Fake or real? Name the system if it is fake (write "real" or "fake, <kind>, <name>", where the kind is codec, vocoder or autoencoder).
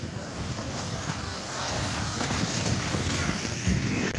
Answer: fake, codec, DAC